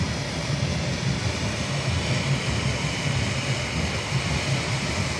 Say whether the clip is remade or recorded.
recorded